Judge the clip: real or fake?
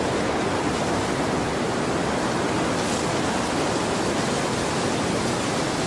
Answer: real